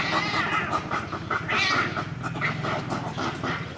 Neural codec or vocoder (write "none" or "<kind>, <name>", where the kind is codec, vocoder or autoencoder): none